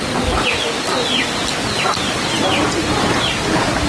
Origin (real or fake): real